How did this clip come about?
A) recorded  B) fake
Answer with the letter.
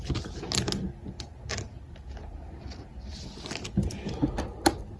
A